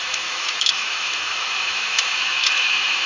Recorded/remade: remade